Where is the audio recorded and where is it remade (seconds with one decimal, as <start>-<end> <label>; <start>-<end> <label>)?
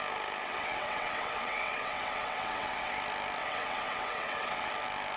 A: 0.0-0.4 recorded; 0.4-2.9 remade; 2.9-3.4 recorded; 3.4-4.7 remade; 4.7-5.2 recorded